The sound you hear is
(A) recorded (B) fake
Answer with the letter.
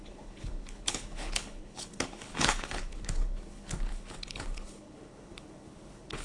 B